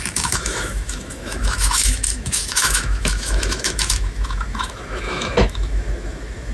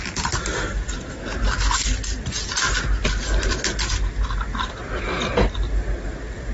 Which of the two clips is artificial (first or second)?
first